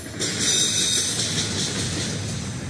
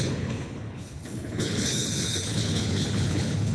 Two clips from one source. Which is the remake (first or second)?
second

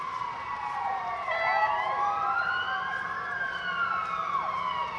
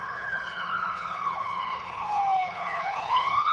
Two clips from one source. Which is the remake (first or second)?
second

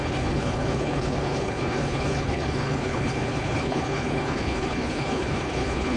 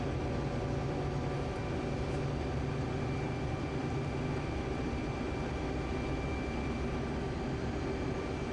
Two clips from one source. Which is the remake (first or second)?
first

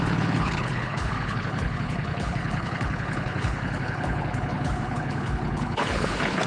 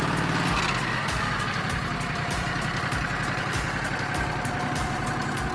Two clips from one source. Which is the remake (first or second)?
first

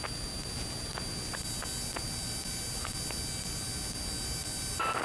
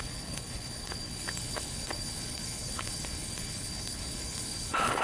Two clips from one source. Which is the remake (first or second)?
second